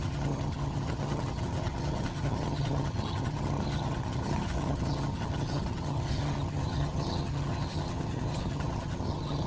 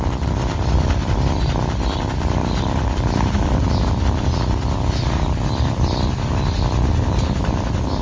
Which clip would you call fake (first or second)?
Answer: first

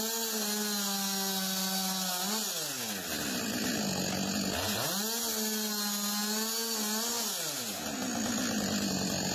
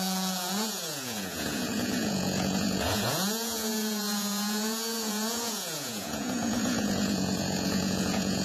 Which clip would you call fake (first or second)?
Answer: second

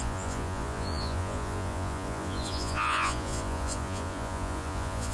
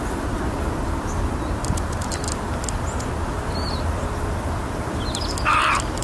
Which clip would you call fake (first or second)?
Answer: first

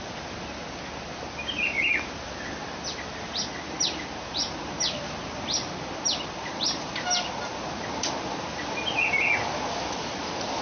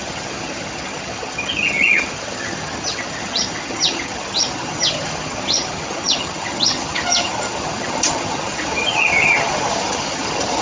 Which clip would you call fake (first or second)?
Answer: second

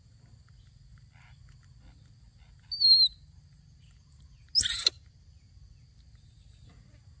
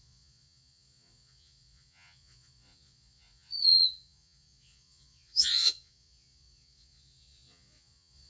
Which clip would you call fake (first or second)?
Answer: second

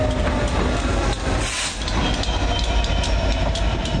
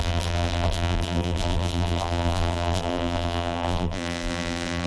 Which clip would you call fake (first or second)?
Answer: second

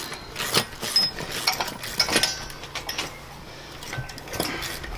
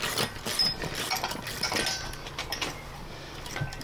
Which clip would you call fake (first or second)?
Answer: second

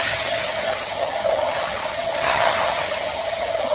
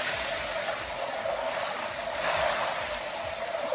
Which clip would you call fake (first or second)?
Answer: first